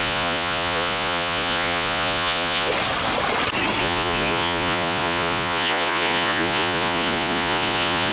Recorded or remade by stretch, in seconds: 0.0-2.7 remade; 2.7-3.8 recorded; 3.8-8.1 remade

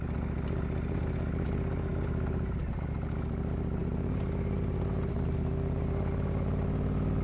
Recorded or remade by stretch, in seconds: 0.0-7.2 recorded

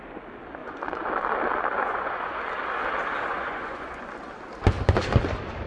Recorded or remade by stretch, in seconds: 0.0-0.6 recorded; 0.6-1.1 remade; 1.1-1.8 recorded; 1.8-2.4 remade; 2.4-3.3 recorded; 3.3-4.0 remade; 4.0-5.7 recorded